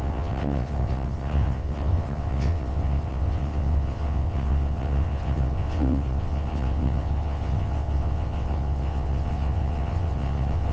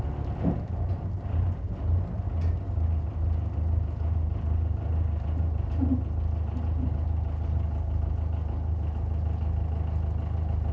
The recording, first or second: second